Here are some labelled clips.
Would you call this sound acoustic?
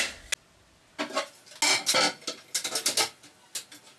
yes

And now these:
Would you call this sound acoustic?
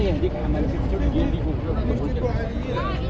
yes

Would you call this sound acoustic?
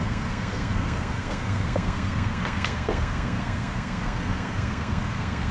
no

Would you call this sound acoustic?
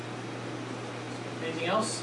yes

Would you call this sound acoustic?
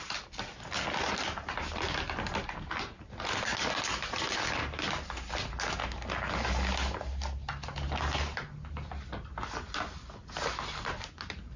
yes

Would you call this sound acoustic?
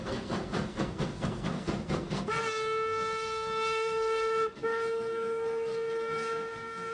no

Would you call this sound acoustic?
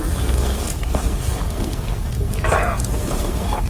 no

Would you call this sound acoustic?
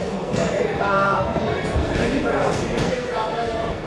no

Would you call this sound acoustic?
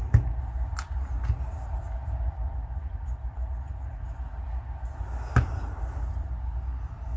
yes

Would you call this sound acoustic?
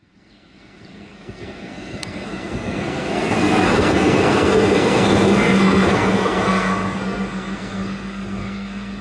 no